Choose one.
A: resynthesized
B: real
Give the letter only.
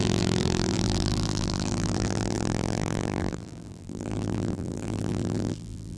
A